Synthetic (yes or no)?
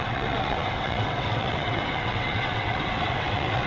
yes